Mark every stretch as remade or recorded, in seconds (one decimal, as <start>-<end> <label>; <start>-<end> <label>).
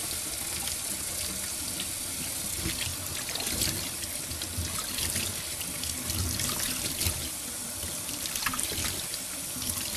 0.0-10.0 recorded